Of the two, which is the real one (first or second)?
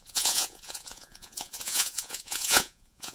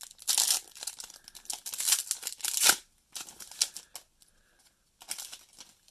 second